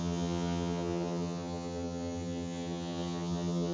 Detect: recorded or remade remade